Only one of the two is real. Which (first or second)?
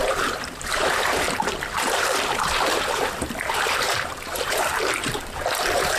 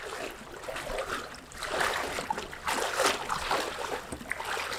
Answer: second